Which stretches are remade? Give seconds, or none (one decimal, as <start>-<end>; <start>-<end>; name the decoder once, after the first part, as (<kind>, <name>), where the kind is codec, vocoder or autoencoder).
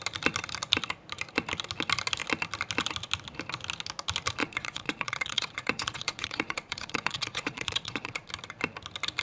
4.4-8.3 (vocoder, Vocos)